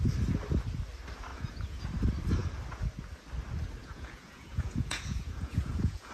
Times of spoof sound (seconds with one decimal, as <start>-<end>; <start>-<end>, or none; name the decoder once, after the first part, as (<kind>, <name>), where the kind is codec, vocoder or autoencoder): 1.3-1.8 (vocoder, Vocos); 3.8-6.1